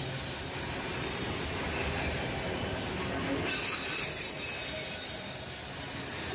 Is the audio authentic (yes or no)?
yes